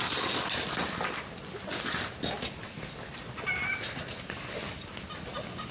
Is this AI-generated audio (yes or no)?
no